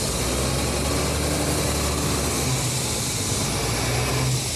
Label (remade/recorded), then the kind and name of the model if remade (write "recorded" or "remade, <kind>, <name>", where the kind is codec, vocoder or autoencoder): recorded